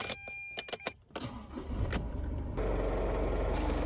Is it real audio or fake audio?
real